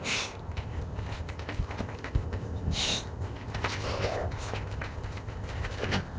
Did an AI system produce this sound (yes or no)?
yes